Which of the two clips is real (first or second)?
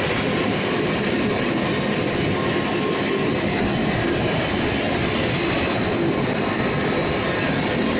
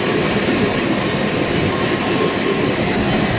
first